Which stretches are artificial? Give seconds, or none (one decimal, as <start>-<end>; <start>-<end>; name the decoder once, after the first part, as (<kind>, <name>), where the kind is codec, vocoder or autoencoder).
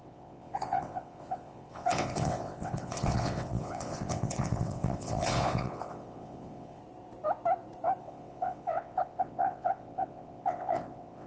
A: 0.0-6.8 (vocoder, WaveNeXt); 8.0-11.3